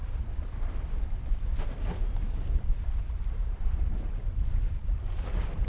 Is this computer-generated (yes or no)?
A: no